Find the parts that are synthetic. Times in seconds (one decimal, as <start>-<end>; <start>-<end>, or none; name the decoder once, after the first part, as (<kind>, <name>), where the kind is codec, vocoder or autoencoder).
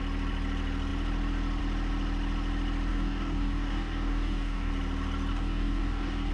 2.9-4.7 (codec, DAC); 5.3-6.3